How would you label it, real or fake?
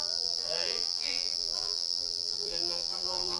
fake